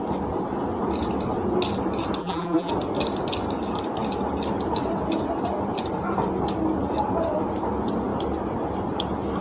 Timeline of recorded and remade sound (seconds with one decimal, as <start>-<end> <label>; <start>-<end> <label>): 0.0-2.2 recorded; 2.2-2.7 remade; 2.7-9.4 recorded